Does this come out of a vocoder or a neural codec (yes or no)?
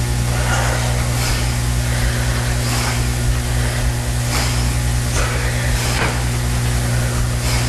no